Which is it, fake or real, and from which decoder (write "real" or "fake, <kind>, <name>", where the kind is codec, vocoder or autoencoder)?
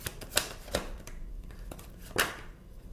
fake, vocoder, BigVGAN v2